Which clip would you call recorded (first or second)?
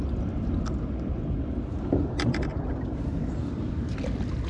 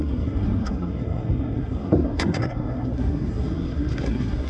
first